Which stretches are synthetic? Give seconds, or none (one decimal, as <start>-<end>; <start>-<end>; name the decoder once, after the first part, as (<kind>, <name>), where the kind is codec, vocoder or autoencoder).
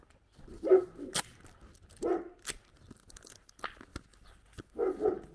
none